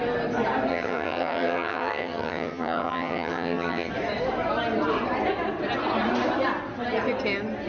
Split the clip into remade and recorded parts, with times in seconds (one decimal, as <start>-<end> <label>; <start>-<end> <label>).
0.0-0.7 recorded; 0.7-3.9 remade; 3.9-7.7 recorded